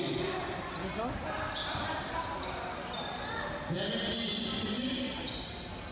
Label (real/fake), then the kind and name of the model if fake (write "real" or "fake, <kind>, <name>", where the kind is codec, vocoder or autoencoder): real